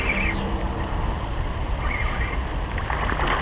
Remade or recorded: recorded